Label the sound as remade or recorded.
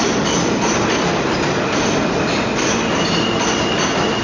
recorded